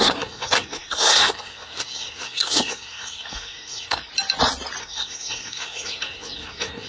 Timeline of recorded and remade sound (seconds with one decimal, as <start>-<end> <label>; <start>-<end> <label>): 0.0-4.1 remade; 4.1-4.8 recorded; 4.8-6.9 remade